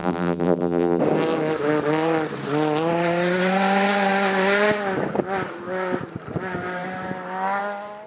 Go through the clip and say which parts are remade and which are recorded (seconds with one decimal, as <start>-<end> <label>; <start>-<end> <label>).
0.0-1.0 remade; 1.0-8.1 recorded